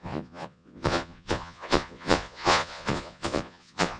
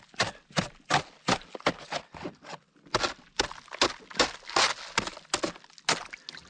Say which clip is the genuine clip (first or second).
second